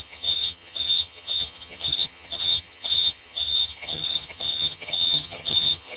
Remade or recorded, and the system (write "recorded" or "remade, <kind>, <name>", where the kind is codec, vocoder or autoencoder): remade, vocoder, HiFi-GAN